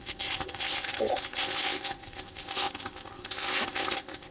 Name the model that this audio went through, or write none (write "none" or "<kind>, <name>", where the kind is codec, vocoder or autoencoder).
codec, ZipCodec